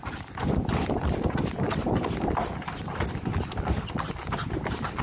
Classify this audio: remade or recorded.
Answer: recorded